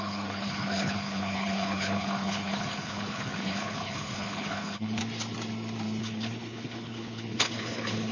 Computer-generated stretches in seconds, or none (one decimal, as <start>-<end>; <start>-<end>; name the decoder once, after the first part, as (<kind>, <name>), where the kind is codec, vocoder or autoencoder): 0.0-5.0 (codec, HILCodec); 6.0-8.1